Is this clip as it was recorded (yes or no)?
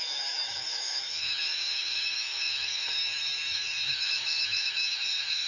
no